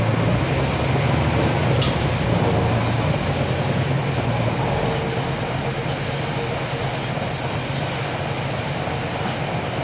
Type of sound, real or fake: real